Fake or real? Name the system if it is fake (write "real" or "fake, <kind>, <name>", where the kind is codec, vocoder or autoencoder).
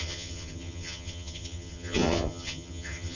fake, vocoder, HiFi-GAN